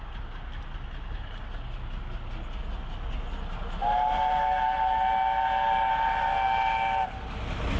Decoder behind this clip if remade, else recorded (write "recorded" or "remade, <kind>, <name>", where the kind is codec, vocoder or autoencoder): recorded